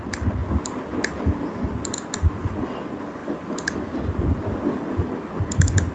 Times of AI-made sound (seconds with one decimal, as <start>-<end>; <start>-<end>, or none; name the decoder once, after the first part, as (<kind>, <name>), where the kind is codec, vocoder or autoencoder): none